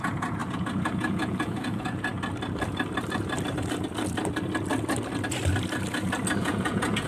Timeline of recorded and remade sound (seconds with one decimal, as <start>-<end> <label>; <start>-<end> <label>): 0.0-2.1 remade; 2.1-6.4 recorded; 6.4-7.1 remade